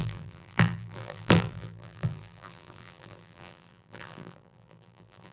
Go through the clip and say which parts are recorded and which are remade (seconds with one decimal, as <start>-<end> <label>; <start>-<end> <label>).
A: 0.0-5.3 remade